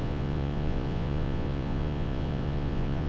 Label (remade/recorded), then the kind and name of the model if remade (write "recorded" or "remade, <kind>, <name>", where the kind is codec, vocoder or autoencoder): remade, vocoder, Vocos